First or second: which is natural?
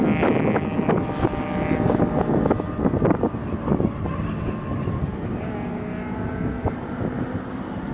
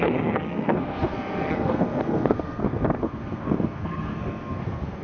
first